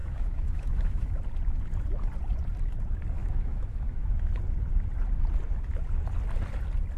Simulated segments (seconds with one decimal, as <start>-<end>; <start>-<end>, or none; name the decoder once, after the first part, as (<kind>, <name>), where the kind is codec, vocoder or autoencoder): 0.0-1.2 (autoencoder, DAC-VAE); 3.2-4.4